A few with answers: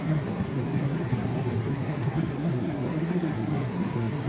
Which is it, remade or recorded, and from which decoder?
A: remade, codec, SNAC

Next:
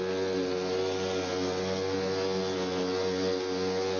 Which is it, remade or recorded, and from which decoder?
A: recorded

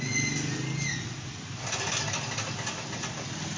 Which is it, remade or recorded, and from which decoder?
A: recorded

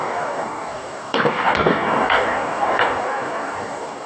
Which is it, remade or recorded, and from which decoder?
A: remade, codec, DAC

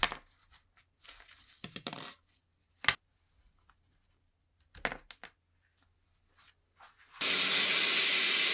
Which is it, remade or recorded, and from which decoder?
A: recorded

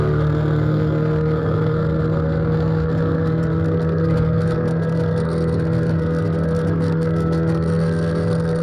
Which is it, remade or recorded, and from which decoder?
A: remade, codec, SNAC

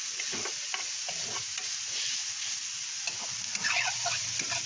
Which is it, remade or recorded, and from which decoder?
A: recorded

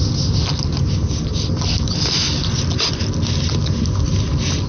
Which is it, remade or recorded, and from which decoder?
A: recorded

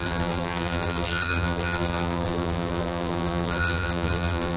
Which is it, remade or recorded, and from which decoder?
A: remade, vocoder, BigVGAN v2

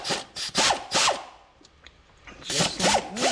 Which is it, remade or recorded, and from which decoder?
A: remade, vocoder, BigVGAN v2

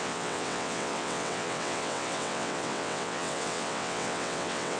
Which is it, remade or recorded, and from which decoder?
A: remade, vocoder, WaveNeXt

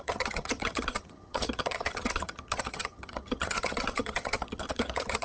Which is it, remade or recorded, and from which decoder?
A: remade, vocoder, HiFi-GAN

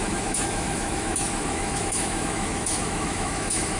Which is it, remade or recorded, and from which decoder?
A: remade, autoencoder, DAC-VAE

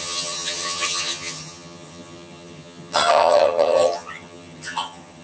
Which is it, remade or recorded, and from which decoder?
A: remade, vocoder, HiFi-GAN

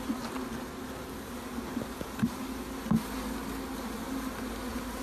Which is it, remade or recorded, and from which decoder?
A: recorded